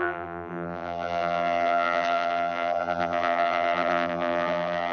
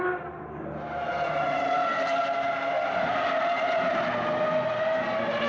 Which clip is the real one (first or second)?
second